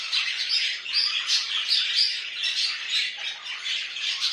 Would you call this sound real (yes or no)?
no